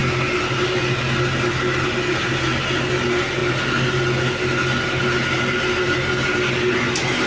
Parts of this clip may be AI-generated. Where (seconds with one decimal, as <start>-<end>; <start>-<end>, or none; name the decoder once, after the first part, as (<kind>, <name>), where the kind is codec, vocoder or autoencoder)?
none